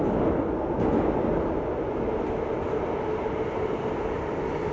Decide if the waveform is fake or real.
real